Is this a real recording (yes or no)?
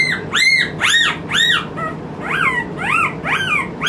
yes